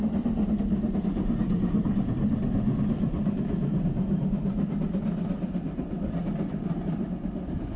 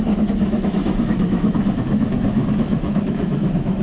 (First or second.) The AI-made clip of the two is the second